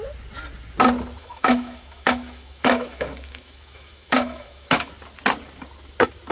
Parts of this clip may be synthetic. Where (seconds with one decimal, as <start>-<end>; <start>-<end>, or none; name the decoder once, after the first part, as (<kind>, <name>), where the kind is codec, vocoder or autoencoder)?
1.2-4.9 (autoencoder, DAC-VAE)